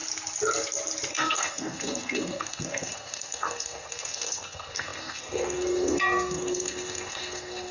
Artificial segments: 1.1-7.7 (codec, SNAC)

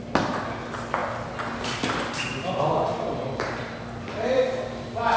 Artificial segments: none

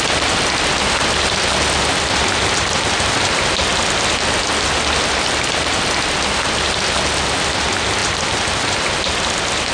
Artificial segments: none